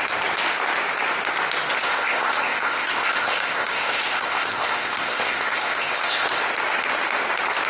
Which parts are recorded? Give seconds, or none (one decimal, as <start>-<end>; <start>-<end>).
0.0-1.8; 6.4-7.7